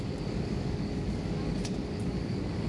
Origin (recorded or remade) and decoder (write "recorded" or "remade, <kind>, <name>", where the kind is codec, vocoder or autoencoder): remade, codec, DAC